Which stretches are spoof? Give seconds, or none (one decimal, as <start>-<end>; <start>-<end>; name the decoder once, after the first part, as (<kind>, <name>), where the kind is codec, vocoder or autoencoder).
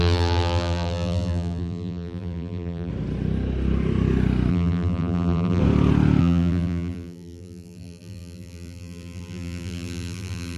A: 0.0-2.9 (vocoder, BigVGAN v2); 4.5-5.6; 6.2-10.6